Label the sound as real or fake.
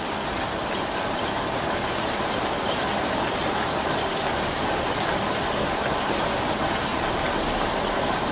real